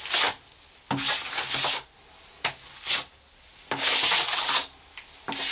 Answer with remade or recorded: recorded